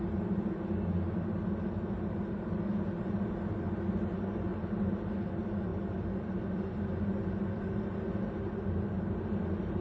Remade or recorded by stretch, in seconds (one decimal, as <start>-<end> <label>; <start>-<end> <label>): 0.0-9.8 recorded